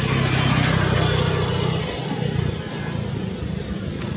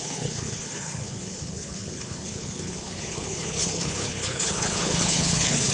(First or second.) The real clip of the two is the first